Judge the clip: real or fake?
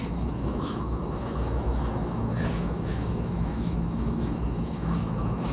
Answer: fake